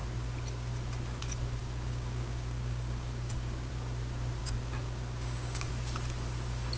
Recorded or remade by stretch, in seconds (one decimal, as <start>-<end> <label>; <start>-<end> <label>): 0.0-1.6 recorded; 1.6-3.7 remade; 3.7-4.4 recorded; 4.4-5.7 remade; 5.7-6.8 recorded

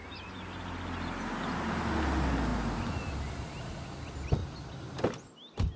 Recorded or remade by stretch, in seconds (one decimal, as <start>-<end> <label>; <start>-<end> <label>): 0.0-5.8 recorded

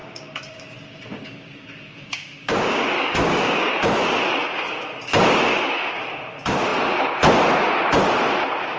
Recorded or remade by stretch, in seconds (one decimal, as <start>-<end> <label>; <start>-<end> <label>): 0.0-3.8 remade; 3.8-4.4 recorded; 4.4-6.0 remade; 6.0-8.8 recorded

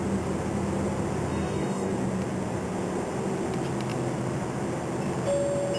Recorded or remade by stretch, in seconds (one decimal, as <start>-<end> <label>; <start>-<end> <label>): 0.0-1.3 recorded; 1.3-1.9 remade; 1.9-5.8 recorded

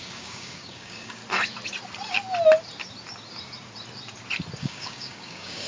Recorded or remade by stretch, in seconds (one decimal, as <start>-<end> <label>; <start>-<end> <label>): 0.0-1.2 remade; 1.2-4.6 recorded; 4.6-5.7 remade

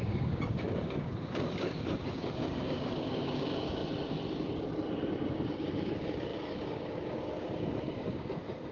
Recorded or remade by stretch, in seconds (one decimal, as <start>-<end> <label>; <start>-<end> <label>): 0.0-3.8 remade; 3.8-5.5 recorded; 5.5-8.7 remade